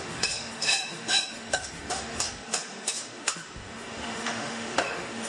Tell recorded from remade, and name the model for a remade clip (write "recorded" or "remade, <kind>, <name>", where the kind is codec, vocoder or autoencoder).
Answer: remade, autoencoder, DAC-VAE